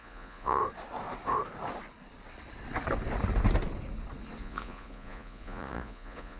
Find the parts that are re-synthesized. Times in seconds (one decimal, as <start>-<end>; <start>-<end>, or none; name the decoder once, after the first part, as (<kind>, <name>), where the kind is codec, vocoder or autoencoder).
0.0-0.6 (vocoder, Vocos); 4.4-6.4

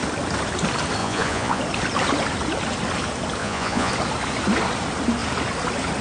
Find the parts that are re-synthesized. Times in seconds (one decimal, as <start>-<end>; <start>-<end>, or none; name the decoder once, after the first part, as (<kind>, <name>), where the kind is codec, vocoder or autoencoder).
1.0-1.6 (vocoder, Vocos); 3.4-3.9

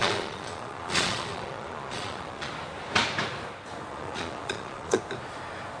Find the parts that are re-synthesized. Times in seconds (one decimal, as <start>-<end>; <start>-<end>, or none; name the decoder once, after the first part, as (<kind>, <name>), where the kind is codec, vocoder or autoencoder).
0.0-2.5 (vocoder, Vocos); 3.9-5.0

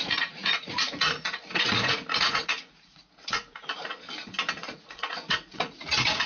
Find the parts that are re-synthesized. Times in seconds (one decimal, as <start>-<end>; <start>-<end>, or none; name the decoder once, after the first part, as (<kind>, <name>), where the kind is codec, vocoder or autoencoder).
0.0-3.9 (vocoder, Vocos); 4.6-6.3

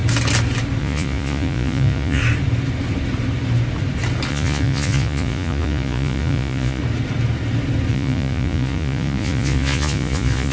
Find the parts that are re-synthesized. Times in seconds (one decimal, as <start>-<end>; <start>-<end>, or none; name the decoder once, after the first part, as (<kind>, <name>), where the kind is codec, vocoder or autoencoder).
0.8-2.2 (vocoder, Vocos); 4.3-6.8; 7.9-10.5

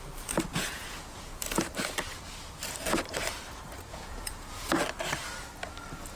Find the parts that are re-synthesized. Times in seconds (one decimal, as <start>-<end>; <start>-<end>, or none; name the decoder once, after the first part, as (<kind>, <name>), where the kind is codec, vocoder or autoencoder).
0.5-1.4 (vocoder, Vocos); 3.9-4.7

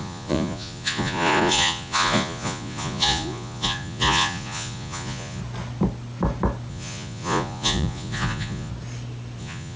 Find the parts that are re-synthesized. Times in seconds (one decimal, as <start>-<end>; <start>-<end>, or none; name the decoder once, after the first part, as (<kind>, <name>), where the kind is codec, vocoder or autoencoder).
0.0-5.4 (vocoder, Vocos); 6.7-8.7; 9.4-9.8

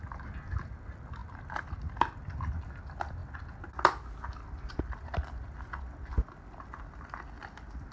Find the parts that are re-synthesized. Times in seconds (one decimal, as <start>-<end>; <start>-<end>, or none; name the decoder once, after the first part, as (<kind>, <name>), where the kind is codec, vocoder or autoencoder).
none